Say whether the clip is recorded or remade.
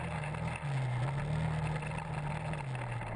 recorded